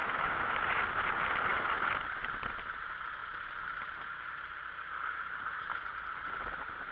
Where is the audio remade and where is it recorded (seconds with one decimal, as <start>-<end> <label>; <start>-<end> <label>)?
0.0-0.8 remade; 0.8-6.9 recorded